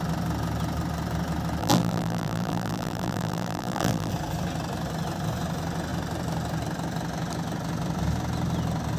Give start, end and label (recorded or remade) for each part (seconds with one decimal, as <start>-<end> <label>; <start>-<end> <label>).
0.0-1.6 recorded; 1.6-4.1 remade; 4.1-9.0 recorded